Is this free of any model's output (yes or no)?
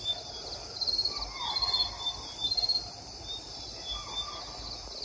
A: yes